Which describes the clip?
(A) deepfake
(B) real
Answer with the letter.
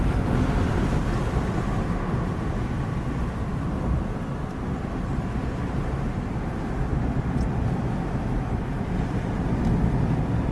B